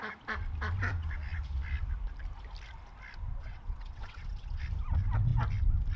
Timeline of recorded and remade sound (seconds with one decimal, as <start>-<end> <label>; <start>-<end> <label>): 0.0-3.3 recorded; 3.3-4.6 remade; 4.6-6.0 recorded